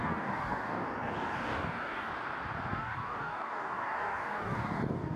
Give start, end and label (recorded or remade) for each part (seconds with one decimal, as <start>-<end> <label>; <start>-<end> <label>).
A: 0.0-2.1 remade; 2.1-2.7 recorded; 2.7-5.2 remade

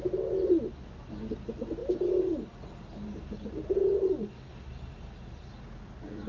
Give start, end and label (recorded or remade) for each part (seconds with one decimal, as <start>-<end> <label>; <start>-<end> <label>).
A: 0.0-6.3 recorded

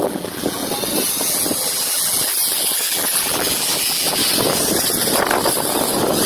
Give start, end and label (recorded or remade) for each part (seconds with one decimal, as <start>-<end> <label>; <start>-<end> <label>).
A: 0.0-0.6 remade; 0.6-1.2 recorded; 1.2-4.2 remade; 4.2-6.3 recorded

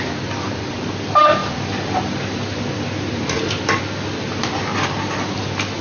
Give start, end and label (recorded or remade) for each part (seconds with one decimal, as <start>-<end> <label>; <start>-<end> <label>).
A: 0.0-5.8 recorded

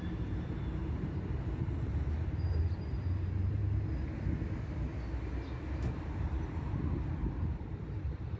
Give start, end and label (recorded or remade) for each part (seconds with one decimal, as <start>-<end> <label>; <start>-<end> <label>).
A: 0.0-3.6 remade; 3.6-6.1 recorded; 6.1-8.4 remade

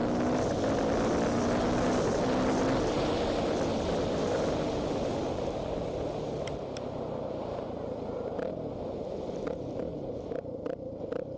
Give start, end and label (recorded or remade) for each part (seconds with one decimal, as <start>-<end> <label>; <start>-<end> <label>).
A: 0.0-11.4 recorded

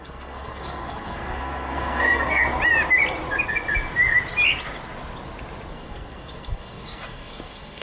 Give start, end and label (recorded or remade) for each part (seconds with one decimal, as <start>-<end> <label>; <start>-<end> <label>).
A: 0.0-2.4 remade; 2.4-5.7 recorded; 5.7-7.8 remade

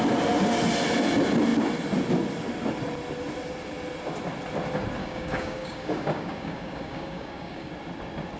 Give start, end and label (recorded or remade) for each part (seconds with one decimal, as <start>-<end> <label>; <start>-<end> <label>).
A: 0.0-5.0 recorded; 5.0-7.7 remade; 7.7-8.4 recorded